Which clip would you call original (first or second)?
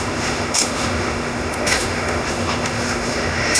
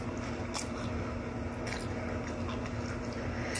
second